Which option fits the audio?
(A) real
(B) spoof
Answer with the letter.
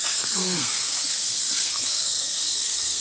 B